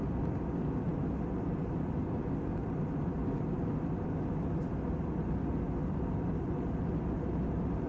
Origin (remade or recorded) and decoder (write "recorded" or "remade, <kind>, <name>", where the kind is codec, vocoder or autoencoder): recorded